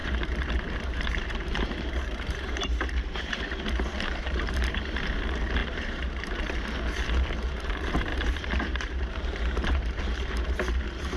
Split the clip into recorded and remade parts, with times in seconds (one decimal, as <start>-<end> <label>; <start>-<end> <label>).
0.0-3.4 remade; 3.4-3.9 recorded; 3.9-4.8 remade; 4.8-5.6 recorded; 5.6-6.3 remade; 6.3-8.1 recorded; 8.1-10.0 remade; 10.0-11.2 recorded